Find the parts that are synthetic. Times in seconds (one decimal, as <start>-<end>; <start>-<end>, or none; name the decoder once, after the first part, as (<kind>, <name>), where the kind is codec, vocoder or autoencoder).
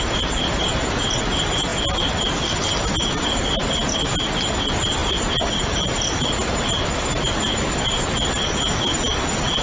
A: none